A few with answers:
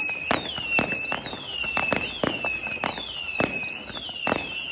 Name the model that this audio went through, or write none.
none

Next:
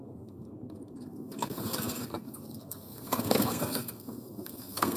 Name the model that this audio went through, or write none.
codec, SNAC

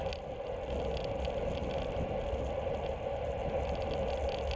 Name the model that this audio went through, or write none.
none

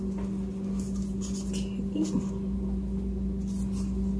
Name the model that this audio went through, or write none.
none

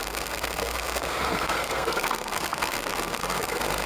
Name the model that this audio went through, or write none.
codec, SNAC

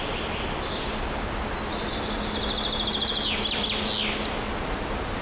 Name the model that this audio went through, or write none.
none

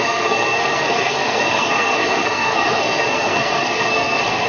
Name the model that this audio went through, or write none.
codec, SNAC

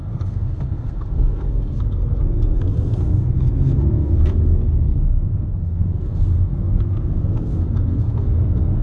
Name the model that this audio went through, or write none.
codec, SNAC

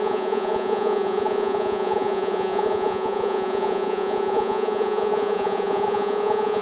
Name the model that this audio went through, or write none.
vocoder, Vocos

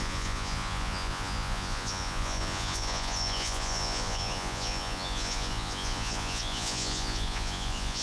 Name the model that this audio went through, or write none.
vocoder, Vocos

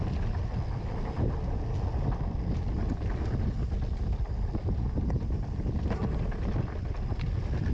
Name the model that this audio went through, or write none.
none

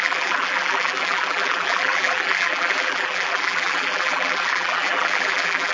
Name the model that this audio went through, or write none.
vocoder, BigVGAN v2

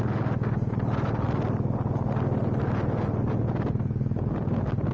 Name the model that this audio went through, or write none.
none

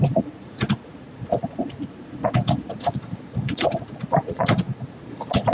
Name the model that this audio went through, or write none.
vocoder, Vocos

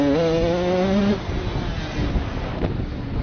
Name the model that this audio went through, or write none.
none